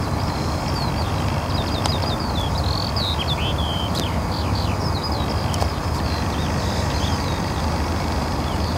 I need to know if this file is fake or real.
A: real